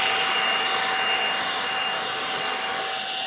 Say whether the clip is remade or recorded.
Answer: recorded